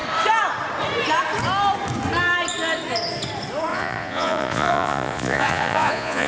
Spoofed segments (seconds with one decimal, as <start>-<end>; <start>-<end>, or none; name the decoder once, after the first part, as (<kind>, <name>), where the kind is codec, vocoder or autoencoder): 3.7-6.3 (vocoder, Vocos)